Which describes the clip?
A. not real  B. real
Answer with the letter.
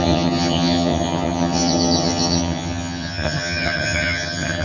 A